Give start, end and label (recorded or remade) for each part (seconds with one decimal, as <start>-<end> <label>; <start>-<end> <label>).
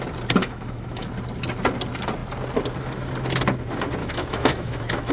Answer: 0.0-0.4 recorded; 0.4-1.1 remade; 1.1-4.0 recorded; 4.0-5.1 remade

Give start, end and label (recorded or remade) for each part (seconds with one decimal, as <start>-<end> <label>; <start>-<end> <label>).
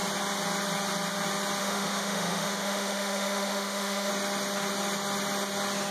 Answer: 0.0-1.6 recorded; 1.6-4.1 remade; 4.1-5.9 recorded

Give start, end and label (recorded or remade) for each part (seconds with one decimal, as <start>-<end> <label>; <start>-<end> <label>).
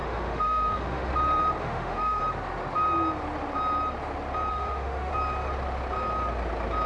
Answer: 0.0-1.1 remade; 1.1-1.6 recorded; 1.6-2.2 remade; 2.2-4.5 recorded; 4.5-5.1 remade; 5.1-6.9 recorded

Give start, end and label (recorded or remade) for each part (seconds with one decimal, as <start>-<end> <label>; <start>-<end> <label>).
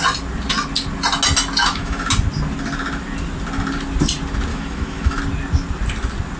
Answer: 0.0-1.6 recorded; 1.6-2.1 remade; 2.1-4.5 recorded; 4.5-5.2 remade; 5.2-6.4 recorded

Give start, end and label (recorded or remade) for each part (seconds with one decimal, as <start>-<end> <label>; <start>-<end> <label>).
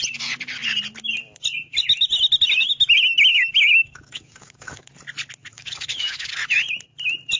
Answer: 0.0-3.3 recorded; 3.3-4.9 remade; 4.9-5.4 recorded; 5.4-6.3 remade; 6.3-7.4 recorded